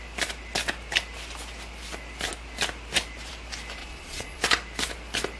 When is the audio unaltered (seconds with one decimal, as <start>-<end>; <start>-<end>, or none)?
0.0-3.8; 4.4-5.4